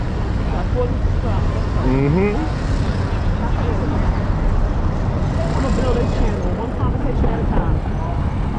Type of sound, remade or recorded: recorded